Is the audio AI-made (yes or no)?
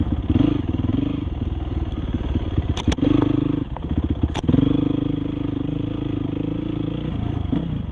no